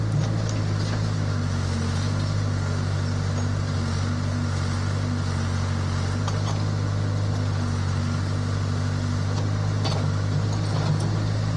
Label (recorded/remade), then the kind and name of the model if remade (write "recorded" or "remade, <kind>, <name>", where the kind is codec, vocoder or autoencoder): recorded